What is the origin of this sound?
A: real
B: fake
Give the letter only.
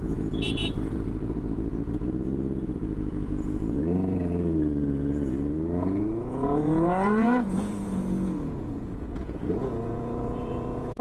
B